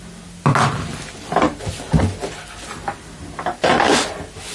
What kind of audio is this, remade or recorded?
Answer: recorded